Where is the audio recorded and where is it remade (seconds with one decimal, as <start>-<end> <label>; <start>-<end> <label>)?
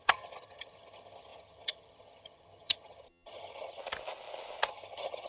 0.0-3.8 remade; 3.8-4.7 recorded; 4.7-5.3 remade